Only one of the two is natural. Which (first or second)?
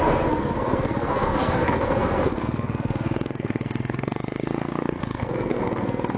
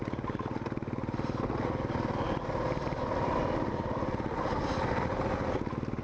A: second